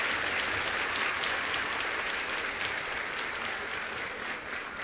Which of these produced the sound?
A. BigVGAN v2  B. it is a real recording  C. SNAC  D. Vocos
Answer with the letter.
A